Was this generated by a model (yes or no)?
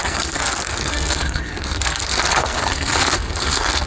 yes